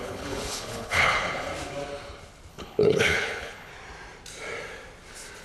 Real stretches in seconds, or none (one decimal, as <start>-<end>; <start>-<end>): 1.5-2.5; 3.7-5.4